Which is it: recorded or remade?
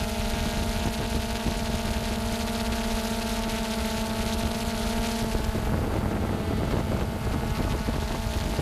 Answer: recorded